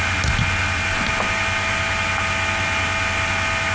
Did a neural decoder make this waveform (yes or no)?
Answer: no